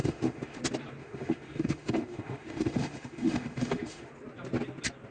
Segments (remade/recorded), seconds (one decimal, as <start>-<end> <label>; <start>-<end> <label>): 0.0-0.6 remade; 0.6-1.0 recorded; 1.0-4.1 remade; 4.1-5.1 recorded

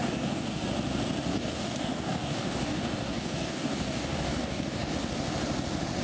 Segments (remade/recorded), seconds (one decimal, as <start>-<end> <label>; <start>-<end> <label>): 0.0-0.6 remade; 0.6-1.3 recorded; 1.3-4.9 remade; 4.9-6.0 recorded

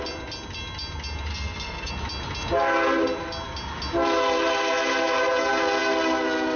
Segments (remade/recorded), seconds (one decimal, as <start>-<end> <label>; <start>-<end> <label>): 0.0-1.3 recorded; 1.3-1.9 remade; 1.9-6.6 recorded

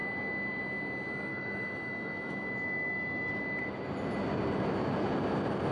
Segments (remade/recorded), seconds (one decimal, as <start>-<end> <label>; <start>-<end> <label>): 0.0-1.3 recorded; 1.3-3.3 remade; 3.3-5.7 recorded

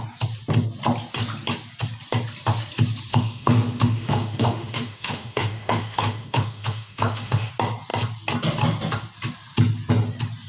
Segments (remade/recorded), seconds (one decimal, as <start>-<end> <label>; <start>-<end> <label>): 0.0-3.1 recorded; 3.1-7.5 remade; 7.5-10.5 recorded